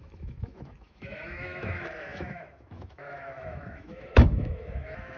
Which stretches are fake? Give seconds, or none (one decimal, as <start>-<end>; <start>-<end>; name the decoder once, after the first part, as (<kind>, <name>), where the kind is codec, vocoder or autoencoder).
0.0-5.2 (autoencoder, DAC-VAE)